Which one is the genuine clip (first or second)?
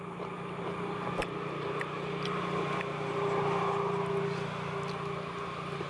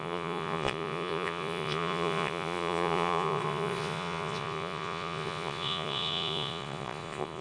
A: first